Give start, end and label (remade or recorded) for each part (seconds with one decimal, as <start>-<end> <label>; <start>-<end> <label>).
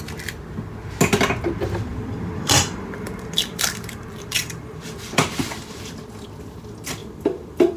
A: 0.0-1.9 recorded; 1.9-6.0 remade; 6.0-7.0 recorded; 7.0-7.8 remade